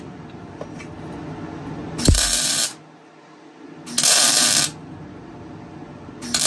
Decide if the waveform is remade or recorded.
recorded